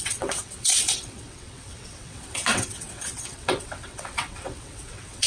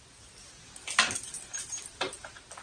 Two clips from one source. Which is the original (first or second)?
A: second